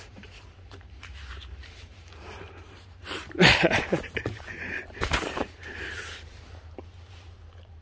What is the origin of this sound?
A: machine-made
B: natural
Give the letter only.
A